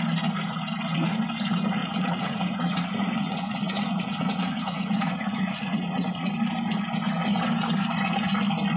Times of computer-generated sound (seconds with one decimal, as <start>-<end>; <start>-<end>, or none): 1.8-6.3